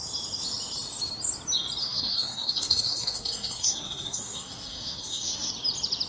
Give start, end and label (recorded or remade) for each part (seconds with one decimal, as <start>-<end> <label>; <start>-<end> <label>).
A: 0.0-1.8 recorded; 1.8-5.5 remade; 5.5-6.1 recorded